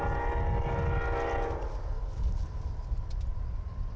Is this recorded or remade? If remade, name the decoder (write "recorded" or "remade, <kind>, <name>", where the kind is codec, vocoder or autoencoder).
recorded